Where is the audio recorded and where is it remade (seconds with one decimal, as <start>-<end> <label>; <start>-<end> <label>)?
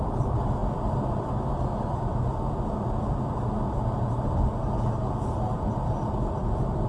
0.0-6.9 recorded